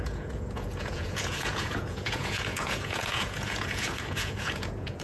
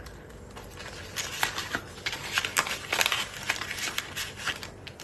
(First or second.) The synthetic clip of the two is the first